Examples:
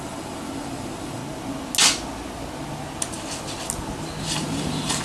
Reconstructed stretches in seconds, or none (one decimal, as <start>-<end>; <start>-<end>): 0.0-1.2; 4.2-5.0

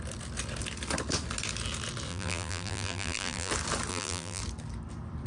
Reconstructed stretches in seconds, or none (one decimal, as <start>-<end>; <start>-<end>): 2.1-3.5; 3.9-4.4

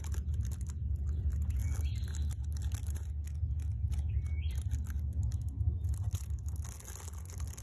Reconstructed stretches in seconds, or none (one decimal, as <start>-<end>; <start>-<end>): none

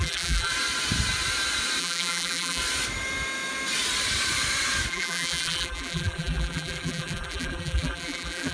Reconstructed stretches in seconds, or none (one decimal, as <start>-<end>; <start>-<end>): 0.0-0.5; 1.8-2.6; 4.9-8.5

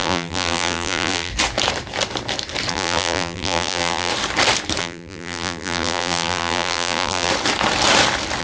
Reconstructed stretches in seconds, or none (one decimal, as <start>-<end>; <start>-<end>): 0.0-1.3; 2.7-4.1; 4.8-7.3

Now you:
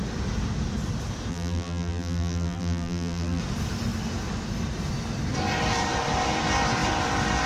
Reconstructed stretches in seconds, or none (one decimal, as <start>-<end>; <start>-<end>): 1.3-3.4